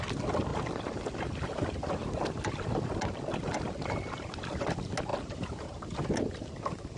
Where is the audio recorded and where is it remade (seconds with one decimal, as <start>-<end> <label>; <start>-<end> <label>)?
0.0-0.5 recorded; 0.5-1.2 remade; 1.2-7.0 recorded